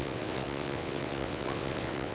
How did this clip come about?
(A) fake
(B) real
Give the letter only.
A